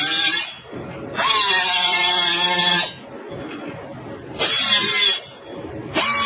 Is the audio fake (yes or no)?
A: no